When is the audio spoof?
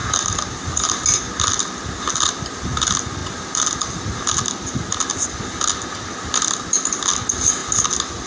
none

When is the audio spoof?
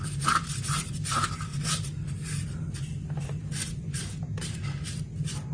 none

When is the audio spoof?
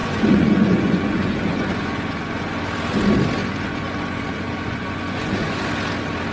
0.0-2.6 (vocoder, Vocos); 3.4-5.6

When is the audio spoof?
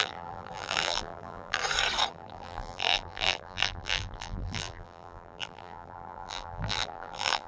0.0-1.6 (vocoder, BigVGAN v2); 2.1-7.5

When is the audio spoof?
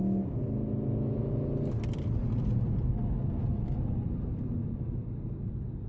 none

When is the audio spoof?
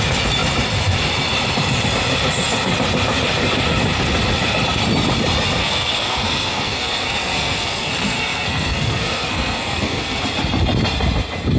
5.6-10.2 (codec, SNAC)